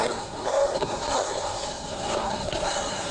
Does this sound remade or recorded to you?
remade